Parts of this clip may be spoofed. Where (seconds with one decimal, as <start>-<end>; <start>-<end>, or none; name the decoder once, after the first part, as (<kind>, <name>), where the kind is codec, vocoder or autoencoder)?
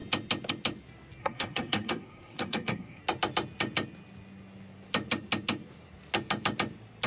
1.2-3.0 (codec, SNAC)